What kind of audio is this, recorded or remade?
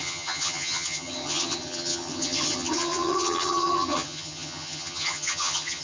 remade